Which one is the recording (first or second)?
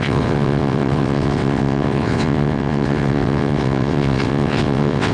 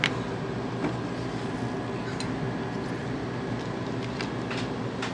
second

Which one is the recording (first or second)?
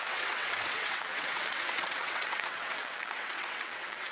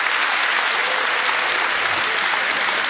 second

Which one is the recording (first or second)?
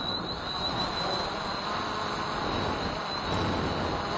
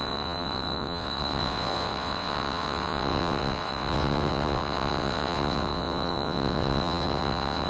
first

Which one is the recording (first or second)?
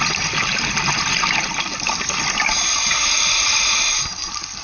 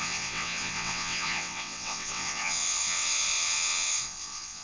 first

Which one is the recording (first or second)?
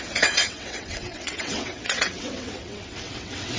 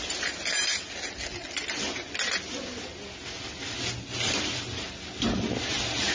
second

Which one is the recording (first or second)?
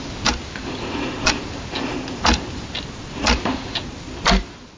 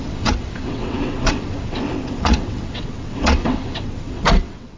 first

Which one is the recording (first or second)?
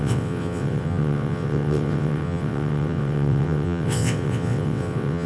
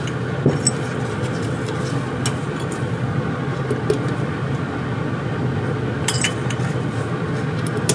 second